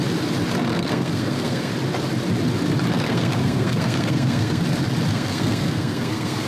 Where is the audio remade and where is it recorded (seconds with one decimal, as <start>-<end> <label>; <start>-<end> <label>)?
0.0-0.7 recorded; 0.7-1.7 remade; 1.7-2.9 recorded; 2.9-4.6 remade; 4.6-5.1 recorded; 5.1-6.5 remade